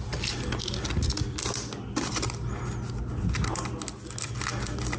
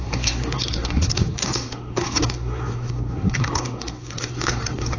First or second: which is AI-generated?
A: second